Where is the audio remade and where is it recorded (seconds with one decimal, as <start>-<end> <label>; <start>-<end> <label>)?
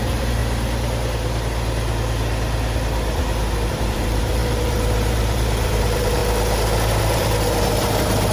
0.0-0.4 remade; 0.4-3.7 recorded; 3.7-6.2 remade; 6.2-7.0 recorded; 7.0-8.3 remade